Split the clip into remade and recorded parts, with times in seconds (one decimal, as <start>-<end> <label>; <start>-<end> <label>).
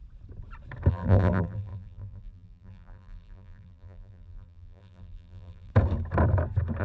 0.0-0.9 recorded; 0.9-5.7 remade; 5.7-6.8 recorded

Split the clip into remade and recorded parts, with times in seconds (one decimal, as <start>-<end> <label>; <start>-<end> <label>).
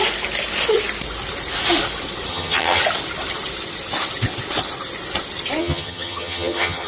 0.0-2.3 recorded; 2.3-2.8 remade; 2.8-5.6 recorded; 5.6-6.9 remade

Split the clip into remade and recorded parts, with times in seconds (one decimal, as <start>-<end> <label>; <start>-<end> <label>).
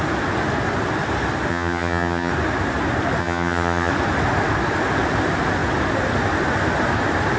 0.0-1.5 recorded; 1.5-2.3 remade; 2.3-3.2 recorded; 3.2-3.9 remade; 3.9-7.4 recorded